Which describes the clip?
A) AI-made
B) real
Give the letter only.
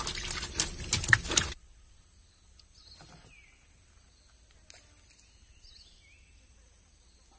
B